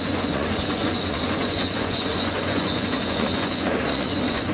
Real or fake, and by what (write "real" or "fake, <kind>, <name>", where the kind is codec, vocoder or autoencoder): fake, vocoder, Vocos